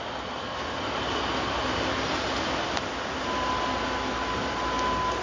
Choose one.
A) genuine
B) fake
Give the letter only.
A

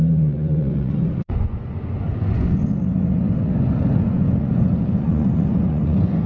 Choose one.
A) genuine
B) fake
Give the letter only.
B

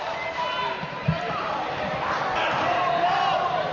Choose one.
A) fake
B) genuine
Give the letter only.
B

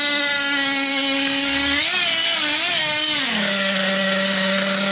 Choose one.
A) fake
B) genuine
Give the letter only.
A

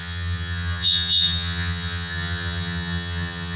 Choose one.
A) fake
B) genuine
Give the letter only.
A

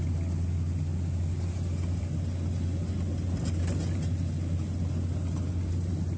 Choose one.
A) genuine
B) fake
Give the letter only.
A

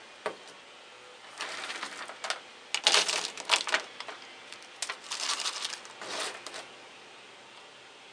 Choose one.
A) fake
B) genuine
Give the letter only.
B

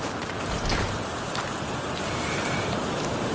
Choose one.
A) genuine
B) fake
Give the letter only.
B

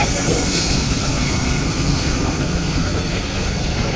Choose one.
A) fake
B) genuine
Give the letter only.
A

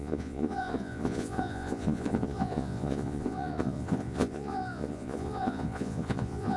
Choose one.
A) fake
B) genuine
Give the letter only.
A